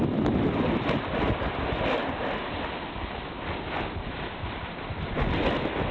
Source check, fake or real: real